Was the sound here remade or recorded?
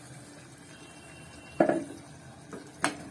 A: recorded